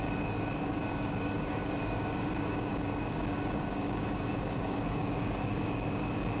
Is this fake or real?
fake